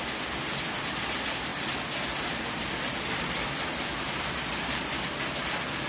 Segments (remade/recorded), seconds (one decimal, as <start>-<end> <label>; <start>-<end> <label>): 0.0-5.9 recorded